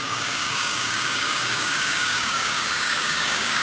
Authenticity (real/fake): fake